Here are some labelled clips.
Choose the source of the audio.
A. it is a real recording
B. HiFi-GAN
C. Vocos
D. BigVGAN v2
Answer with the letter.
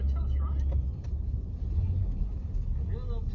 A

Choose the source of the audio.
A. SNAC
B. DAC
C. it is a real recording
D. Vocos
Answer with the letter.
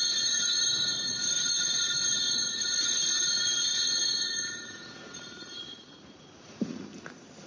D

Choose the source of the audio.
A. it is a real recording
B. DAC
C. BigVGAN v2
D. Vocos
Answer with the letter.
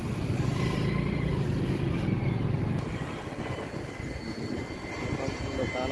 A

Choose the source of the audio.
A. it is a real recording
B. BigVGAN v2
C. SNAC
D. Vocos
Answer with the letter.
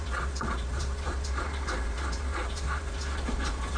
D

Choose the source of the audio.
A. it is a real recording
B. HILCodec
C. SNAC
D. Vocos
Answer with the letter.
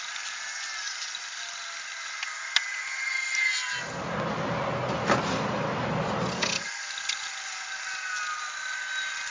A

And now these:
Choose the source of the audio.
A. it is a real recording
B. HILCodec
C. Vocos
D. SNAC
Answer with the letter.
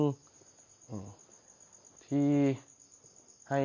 A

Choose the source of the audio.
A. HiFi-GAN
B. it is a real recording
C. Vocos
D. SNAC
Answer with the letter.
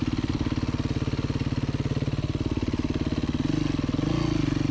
B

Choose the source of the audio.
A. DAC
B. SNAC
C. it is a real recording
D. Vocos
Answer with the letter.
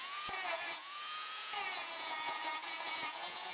D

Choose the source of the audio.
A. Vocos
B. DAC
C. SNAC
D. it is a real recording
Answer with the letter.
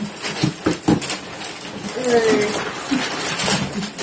D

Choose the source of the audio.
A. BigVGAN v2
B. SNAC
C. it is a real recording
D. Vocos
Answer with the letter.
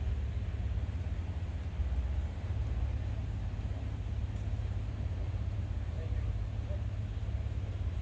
C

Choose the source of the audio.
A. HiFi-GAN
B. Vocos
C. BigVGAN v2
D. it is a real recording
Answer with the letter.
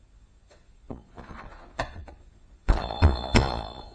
B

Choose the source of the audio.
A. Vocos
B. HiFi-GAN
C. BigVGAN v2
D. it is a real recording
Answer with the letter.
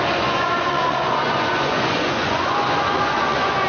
A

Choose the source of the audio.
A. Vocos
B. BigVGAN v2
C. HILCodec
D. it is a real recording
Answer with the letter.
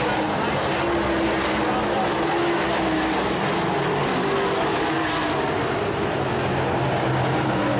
D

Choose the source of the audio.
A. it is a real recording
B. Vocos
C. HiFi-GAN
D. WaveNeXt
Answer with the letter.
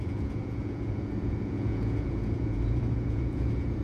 B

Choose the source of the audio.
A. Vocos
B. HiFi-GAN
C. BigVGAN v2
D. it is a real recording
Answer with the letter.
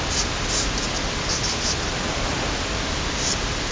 D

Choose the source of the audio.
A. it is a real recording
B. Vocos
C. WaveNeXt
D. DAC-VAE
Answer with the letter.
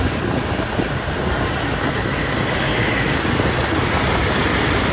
A